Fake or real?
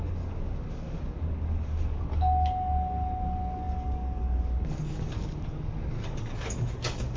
fake